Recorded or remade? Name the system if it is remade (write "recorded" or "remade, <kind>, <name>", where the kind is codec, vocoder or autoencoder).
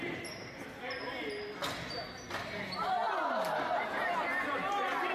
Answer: recorded